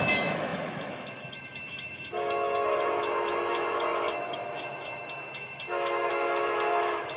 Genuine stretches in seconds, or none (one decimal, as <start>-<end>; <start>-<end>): none